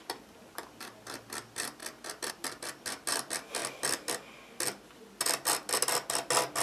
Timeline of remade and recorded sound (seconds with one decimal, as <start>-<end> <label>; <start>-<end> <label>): 0.0-6.6 recorded